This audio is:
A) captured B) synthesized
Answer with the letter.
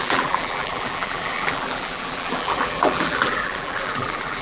B